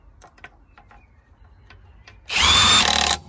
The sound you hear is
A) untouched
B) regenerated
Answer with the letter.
A